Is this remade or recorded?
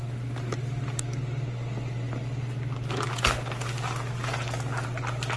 recorded